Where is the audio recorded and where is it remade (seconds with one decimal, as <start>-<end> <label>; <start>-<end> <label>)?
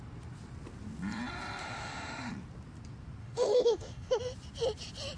0.0-1.6 recorded; 1.6-2.3 remade; 2.3-3.2 recorded; 3.2-4.2 remade; 4.2-5.2 recorded